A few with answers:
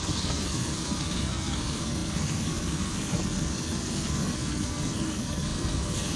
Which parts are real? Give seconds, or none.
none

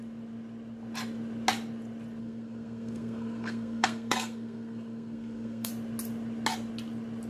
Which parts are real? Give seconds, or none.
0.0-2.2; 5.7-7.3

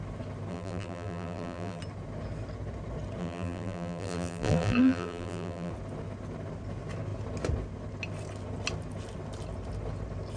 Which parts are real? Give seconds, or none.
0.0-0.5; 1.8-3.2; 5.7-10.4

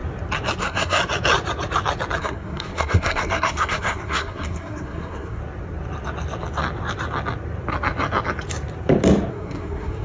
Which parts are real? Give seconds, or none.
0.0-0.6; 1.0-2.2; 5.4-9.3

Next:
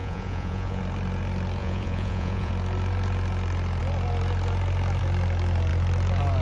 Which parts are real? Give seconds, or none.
0.8-1.6; 2.5-6.4

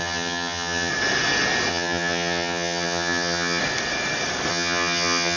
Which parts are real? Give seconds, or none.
0.9-1.7; 3.6-4.5

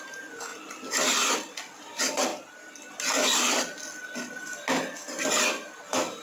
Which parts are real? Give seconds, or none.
0.0-6.2

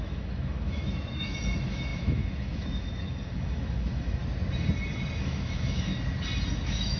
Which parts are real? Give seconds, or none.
4.2-5.2; 5.9-6.5